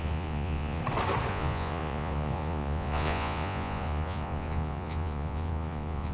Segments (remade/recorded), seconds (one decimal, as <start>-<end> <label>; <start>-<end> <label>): 0.0-0.8 remade; 0.8-1.3 recorded; 1.3-6.1 remade